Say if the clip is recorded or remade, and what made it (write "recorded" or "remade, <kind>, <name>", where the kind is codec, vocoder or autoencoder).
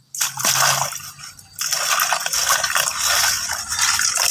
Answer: recorded